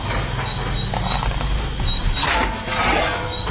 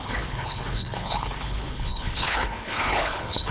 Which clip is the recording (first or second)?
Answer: first